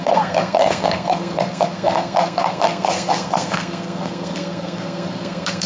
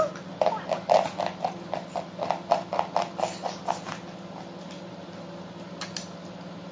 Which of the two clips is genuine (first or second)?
second